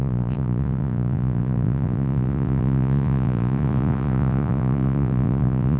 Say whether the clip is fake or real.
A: fake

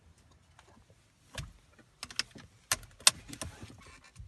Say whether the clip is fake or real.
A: real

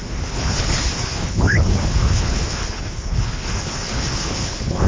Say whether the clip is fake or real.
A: fake